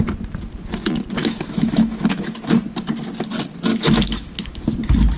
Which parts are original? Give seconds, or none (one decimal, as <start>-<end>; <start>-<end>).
0.0-1.2; 2.5-3.7; 4.6-5.2